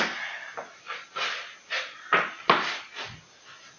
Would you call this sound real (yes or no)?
yes